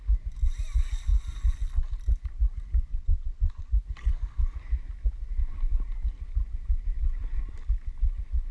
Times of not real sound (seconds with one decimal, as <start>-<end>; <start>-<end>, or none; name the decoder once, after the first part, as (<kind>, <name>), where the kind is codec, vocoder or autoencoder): 2.9-3.7 (vocoder, Vocos)